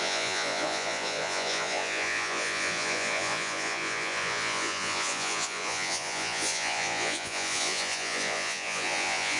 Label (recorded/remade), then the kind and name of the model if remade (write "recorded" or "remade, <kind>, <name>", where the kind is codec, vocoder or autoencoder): remade, vocoder, Vocos